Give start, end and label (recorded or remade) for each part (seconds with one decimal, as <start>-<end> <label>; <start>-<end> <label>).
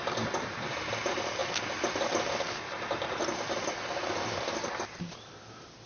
0.0-5.9 recorded